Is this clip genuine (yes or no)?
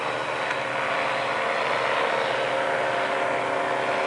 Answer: yes